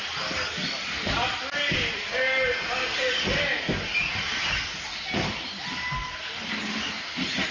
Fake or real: real